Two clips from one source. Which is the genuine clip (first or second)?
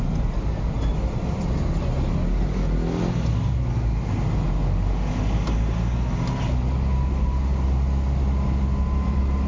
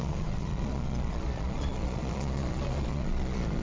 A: first